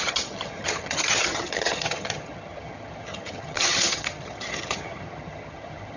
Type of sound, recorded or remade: remade